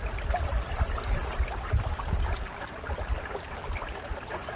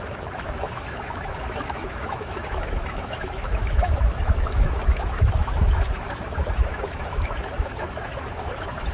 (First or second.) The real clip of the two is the first